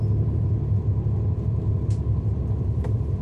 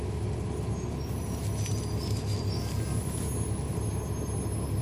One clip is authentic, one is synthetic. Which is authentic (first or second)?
second